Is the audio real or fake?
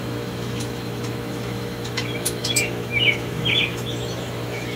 fake